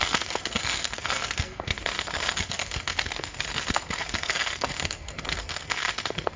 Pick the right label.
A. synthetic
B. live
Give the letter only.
A